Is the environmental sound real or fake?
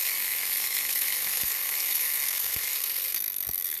fake